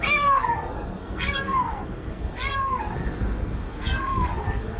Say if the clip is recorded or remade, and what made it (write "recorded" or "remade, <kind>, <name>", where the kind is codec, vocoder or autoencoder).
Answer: remade, codec, SNAC